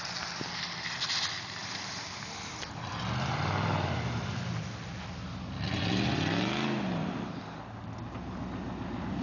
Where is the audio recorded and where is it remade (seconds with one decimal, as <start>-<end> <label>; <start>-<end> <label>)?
0.0-9.2 recorded